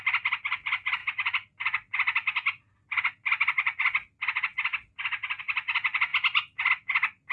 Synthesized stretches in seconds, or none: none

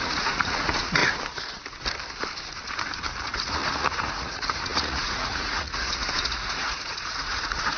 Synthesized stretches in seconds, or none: 0.0-1.0 (vocoder, Vocos); 3.2-7.8

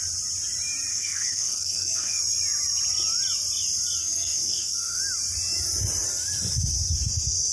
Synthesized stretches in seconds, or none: 0.9-2.2 (codec, SNAC); 4.0-5.0

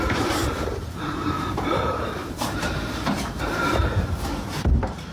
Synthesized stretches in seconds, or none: 0.0-5.1 (vocoder, BigVGAN v2)

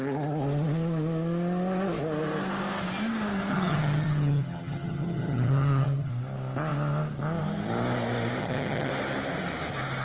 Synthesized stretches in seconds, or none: 3.5-6.1 (vocoder, HiFi-GAN); 8.4-8.9

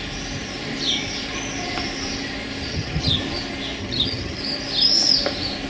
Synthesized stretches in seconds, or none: 2.7-3.2 (vocoder, HiFi-GAN); 3.8-4.4

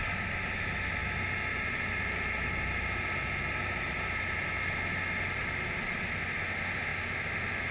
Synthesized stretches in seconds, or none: none

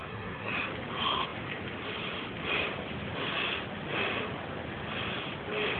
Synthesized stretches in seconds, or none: 0.0-0.5 (codec, SNAC)